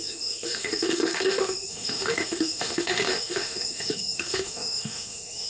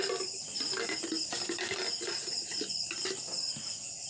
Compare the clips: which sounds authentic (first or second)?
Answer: second